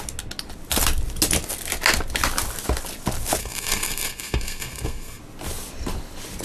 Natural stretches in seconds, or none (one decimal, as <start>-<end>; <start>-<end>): 0.0-3.4; 5.2-6.4